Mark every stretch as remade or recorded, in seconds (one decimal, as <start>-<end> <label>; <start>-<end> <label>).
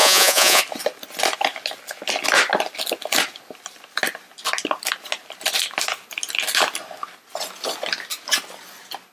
0.0-0.6 remade; 0.6-9.1 recorded